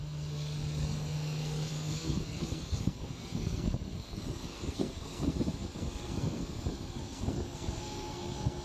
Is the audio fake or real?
fake